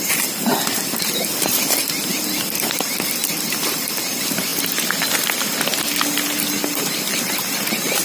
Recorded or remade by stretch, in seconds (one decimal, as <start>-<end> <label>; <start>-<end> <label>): 0.0-8.0 recorded